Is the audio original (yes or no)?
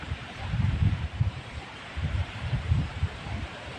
no